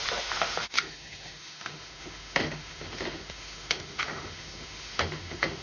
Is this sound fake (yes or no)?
yes